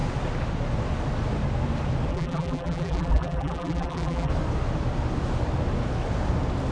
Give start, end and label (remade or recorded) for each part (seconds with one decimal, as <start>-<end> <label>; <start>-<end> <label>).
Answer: 0.0-2.1 recorded; 2.1-4.3 remade; 4.3-6.7 recorded